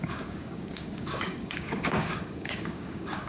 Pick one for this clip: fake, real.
fake